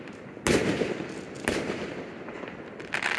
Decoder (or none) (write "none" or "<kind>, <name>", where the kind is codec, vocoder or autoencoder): none